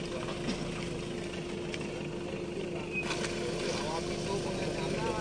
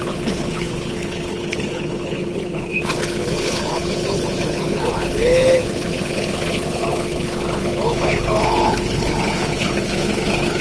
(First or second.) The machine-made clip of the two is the second